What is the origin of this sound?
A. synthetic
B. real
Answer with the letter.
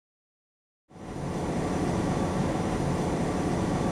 B